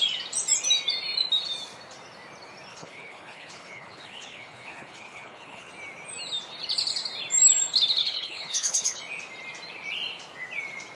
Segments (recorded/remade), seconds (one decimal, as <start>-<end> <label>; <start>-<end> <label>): 0.0-2.7 recorded; 2.7-5.7 remade; 5.7-8.0 recorded; 8.0-9.0 remade; 9.0-10.9 recorded